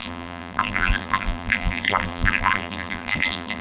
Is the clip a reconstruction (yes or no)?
yes